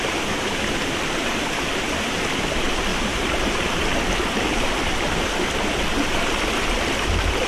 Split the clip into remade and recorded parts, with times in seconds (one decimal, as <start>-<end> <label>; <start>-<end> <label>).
0.0-2.9 recorded; 2.9-3.9 remade; 3.9-7.5 recorded